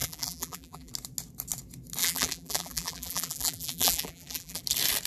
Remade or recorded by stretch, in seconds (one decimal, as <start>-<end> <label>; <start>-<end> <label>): 0.0-0.9 remade; 0.9-2.0 recorded; 2.0-4.6 remade; 4.6-5.1 recorded